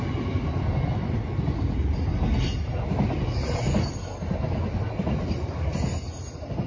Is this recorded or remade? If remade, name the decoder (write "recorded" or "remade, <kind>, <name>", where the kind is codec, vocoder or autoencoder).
recorded